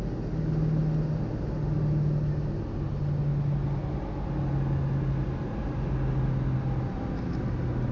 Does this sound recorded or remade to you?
recorded